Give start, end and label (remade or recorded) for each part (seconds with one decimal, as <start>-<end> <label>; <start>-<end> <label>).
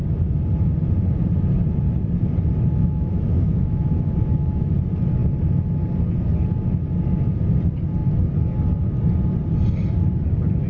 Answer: 0.0-2.8 recorded; 2.8-4.7 remade; 4.7-10.7 recorded